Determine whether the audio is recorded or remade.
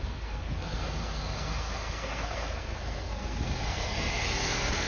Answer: remade